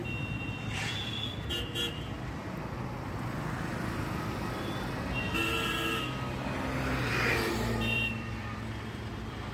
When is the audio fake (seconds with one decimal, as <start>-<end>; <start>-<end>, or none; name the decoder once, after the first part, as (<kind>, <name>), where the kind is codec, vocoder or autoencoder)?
7.1-9.5 (vocoder, BigVGAN v2)